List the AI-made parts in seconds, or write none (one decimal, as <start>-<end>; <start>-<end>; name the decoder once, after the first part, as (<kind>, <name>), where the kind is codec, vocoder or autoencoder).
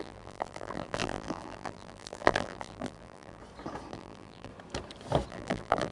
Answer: 0.0-3.4 (vocoder, BigVGAN v2); 3.9-4.5; 5.3-5.9